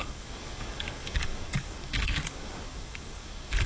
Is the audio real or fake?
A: fake